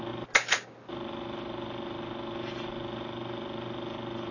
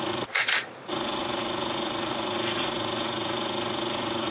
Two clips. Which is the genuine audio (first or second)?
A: first